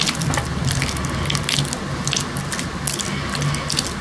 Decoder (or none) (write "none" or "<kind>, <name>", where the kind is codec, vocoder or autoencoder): none